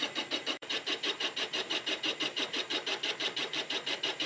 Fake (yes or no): yes